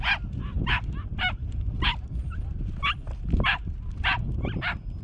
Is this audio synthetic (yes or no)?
no